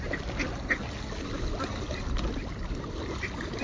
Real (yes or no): yes